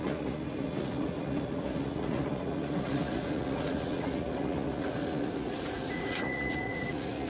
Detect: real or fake fake